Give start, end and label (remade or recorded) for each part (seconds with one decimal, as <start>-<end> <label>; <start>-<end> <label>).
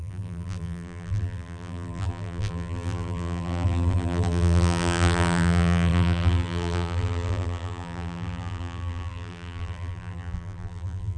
0.0-11.2 remade